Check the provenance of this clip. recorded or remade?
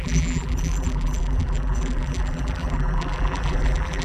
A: remade